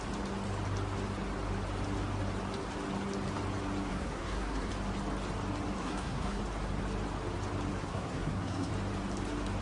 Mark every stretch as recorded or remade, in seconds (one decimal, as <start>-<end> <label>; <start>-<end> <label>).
0.0-3.9 recorded; 3.9-4.7 remade; 4.7-5.8 recorded; 5.8-6.4 remade; 6.4-7.9 recorded; 7.9-8.7 remade; 8.7-9.6 recorded